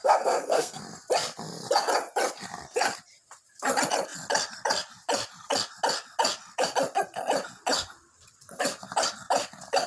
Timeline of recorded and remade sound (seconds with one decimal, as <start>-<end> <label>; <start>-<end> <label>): 0.0-0.8 remade; 0.8-9.9 recorded